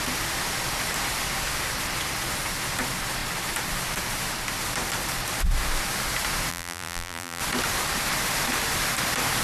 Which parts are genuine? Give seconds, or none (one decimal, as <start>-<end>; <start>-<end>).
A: 0.0-6.5; 7.4-9.4